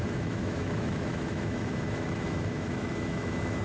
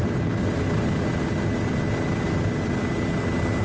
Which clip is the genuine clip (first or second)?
second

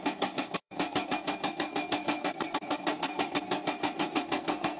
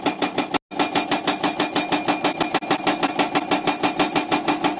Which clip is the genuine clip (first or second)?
second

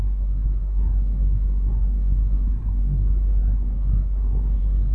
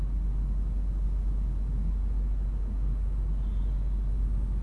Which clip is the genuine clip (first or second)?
second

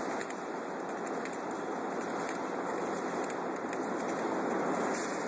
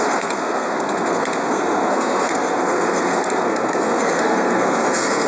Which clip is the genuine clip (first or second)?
first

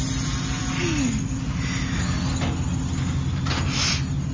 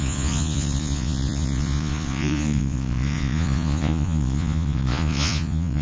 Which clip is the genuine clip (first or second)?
first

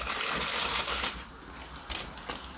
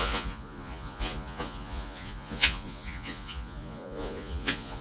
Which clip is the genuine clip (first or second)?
first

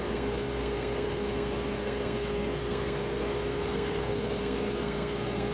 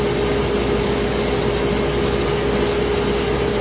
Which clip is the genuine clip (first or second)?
second